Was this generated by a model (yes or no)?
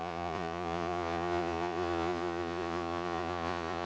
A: yes